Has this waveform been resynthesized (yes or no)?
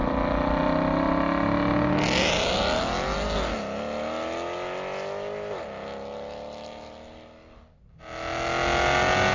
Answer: no